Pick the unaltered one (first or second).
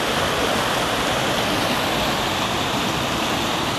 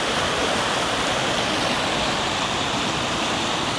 first